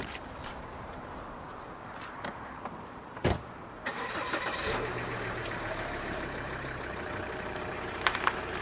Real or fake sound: fake